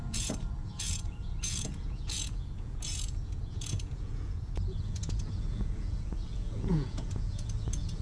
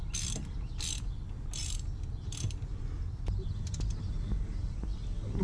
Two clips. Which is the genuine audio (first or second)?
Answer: second